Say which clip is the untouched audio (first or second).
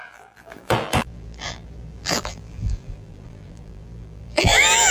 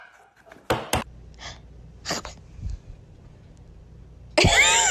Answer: second